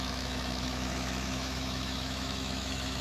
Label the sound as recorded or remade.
remade